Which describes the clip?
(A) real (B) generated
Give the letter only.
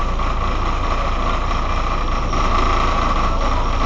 A